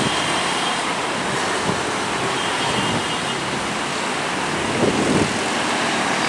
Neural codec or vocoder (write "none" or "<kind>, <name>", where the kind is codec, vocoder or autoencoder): none